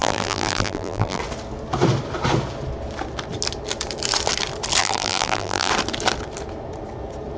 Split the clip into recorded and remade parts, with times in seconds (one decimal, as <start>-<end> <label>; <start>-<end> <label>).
0.0-1.2 remade; 1.2-4.8 recorded; 4.8-5.7 remade; 5.7-7.4 recorded